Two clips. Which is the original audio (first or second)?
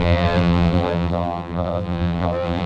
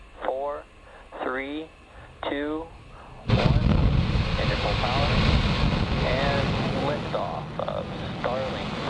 second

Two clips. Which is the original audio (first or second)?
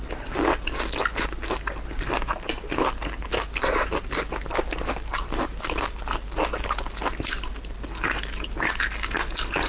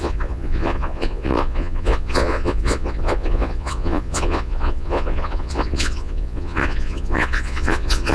first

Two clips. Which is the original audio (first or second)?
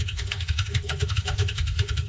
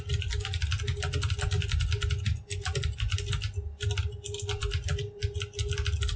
second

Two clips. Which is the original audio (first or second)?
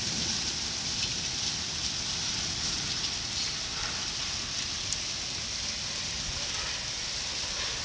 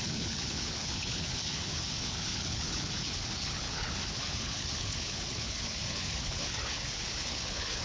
first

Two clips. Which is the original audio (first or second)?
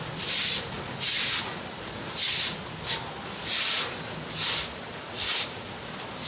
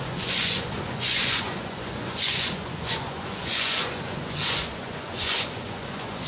first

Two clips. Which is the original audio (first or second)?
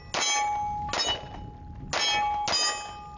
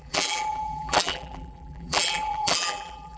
first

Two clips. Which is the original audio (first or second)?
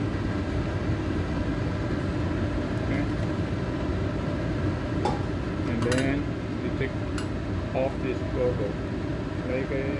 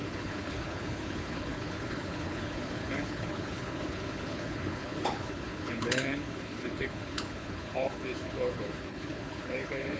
first